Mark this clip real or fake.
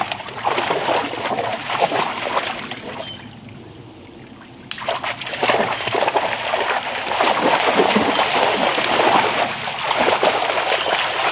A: real